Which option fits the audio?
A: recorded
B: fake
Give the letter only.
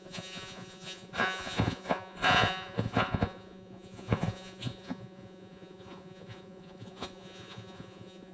B